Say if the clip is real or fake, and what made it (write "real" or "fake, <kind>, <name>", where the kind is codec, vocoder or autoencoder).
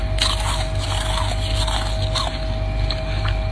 real